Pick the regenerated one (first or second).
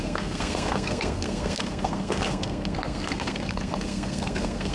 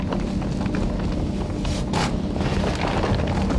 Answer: first